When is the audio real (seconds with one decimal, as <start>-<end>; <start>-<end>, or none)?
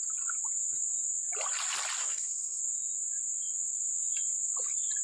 0.0-2.0; 2.6-5.0